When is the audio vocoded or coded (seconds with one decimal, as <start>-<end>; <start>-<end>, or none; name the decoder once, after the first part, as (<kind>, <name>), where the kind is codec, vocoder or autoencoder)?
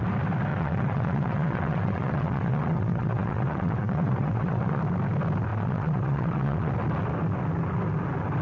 0.5-4.8 (vocoder, WaveNeXt); 5.5-6.7